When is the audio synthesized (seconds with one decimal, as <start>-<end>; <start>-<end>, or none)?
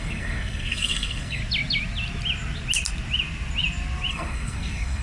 0.0-1.4; 4.1-5.0